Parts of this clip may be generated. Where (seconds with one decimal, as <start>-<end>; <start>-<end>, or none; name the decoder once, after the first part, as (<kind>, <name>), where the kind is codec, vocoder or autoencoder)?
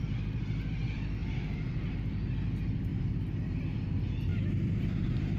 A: 2.9-3.6 (vocoder, BigVGAN v2); 4.3-5.4